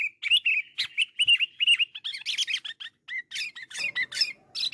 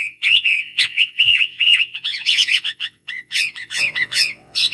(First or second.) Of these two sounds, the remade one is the second